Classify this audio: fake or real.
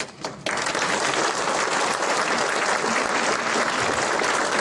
real